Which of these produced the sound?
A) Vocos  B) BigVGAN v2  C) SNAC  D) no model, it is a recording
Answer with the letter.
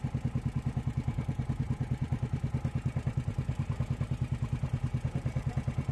B